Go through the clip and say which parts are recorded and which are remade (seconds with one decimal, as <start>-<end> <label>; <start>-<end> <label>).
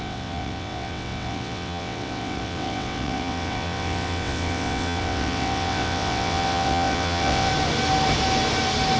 0.0-7.5 remade; 7.5-9.0 recorded